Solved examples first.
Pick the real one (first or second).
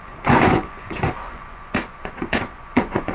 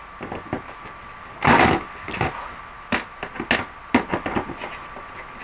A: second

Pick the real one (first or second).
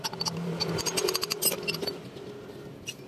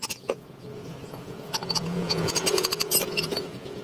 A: first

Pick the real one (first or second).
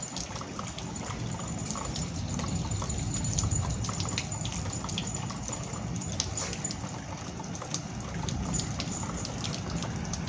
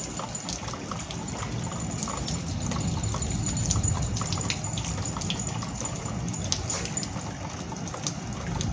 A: second